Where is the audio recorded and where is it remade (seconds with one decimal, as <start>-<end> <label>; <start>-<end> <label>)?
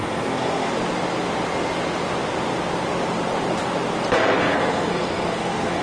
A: 0.0-0.7 remade; 0.7-4.4 recorded; 4.4-5.8 remade